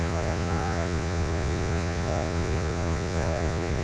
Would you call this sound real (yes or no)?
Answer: no